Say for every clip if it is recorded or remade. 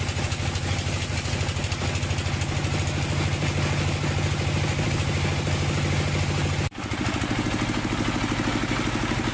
recorded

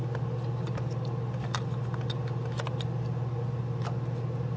recorded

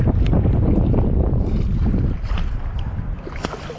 recorded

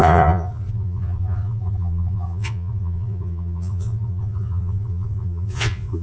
remade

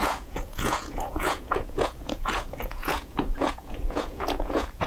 remade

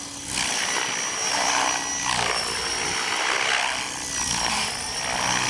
recorded